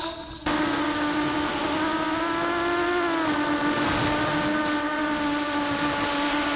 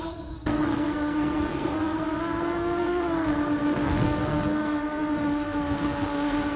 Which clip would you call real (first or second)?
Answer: first